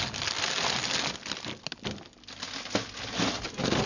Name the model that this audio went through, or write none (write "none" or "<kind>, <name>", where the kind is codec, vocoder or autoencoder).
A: none